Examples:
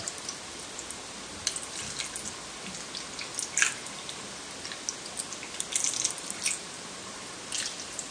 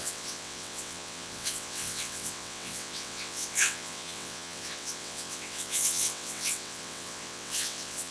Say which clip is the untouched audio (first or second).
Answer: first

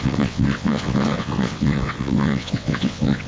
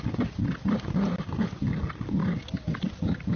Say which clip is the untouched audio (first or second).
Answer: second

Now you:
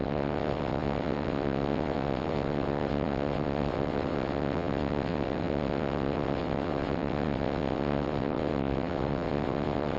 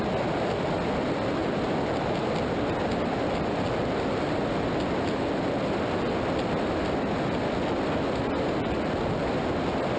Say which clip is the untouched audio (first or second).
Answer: second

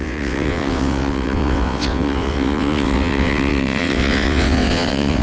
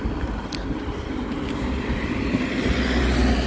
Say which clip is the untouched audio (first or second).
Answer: second